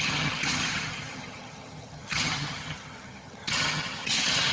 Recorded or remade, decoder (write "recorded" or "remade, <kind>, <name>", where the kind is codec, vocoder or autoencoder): remade, vocoder, HiFi-GAN